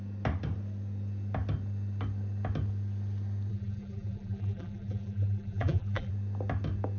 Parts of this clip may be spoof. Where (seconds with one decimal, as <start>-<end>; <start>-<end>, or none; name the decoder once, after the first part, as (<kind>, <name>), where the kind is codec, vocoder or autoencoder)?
3.5-6.1 (vocoder, BigVGAN v2)